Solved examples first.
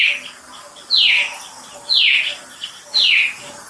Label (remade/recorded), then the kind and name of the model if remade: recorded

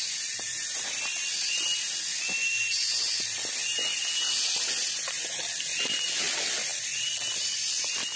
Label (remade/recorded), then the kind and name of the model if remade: recorded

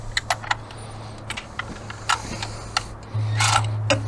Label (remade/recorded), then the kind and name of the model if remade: recorded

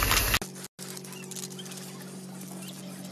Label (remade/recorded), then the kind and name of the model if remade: recorded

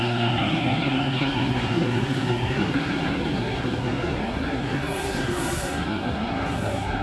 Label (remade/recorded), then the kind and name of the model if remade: remade, codec, SNAC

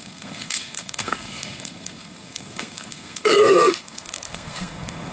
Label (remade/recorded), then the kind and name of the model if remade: remade, codec, SNAC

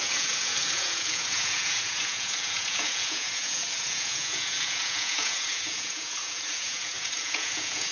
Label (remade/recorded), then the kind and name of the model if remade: remade, vocoder, Vocos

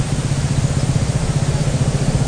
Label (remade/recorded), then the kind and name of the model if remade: recorded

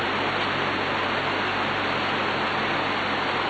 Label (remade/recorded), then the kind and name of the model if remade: recorded